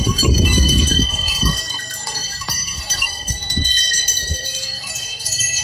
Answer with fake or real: fake